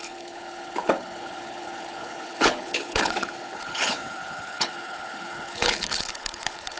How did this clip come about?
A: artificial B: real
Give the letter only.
A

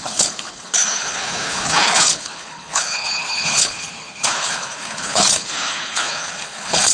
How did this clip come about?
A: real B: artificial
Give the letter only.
B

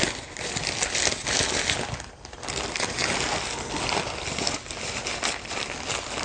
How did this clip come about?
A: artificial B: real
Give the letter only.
B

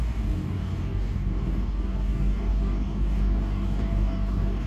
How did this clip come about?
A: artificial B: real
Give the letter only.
A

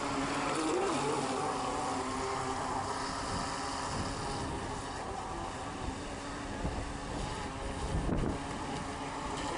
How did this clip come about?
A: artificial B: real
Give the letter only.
B